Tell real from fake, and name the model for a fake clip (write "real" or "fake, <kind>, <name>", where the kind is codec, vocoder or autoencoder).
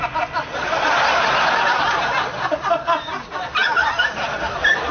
real